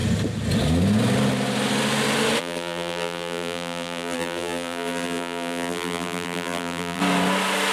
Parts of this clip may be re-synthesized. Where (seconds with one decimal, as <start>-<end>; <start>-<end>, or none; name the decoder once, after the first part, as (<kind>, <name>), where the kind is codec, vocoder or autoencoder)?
2.4-7.0 (vocoder, BigVGAN v2)